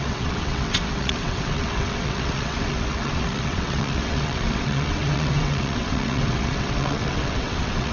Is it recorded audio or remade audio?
remade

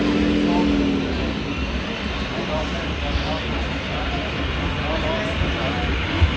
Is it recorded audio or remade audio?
recorded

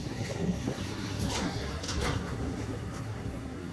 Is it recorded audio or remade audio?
remade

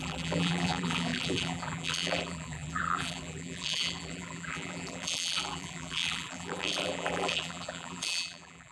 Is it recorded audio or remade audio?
remade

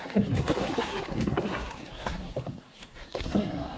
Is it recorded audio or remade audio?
remade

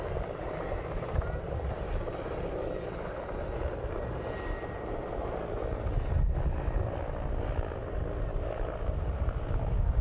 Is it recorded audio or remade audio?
recorded